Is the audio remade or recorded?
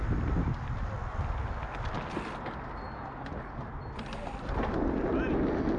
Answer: recorded